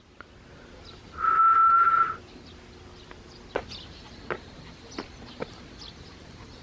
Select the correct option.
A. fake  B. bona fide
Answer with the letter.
B